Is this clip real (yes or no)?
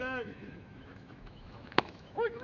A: no